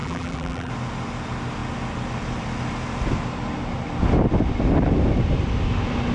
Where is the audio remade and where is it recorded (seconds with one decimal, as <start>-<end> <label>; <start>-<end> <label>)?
0.0-0.7 remade; 0.7-6.1 recorded